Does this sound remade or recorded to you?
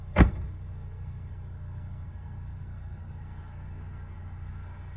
remade